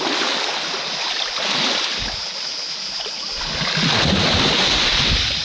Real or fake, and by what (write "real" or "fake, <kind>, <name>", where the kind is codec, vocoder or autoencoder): real